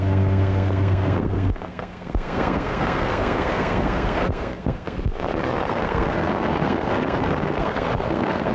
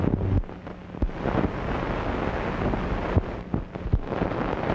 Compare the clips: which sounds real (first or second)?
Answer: second